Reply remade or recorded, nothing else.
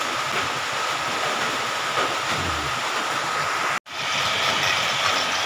recorded